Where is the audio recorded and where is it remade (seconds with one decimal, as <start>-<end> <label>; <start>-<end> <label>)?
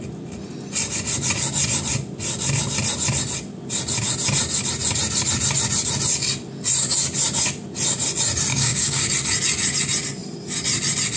0.0-8.5 recorded; 8.5-9.1 remade; 9.1-11.2 recorded